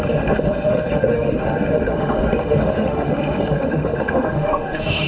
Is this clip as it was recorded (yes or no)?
no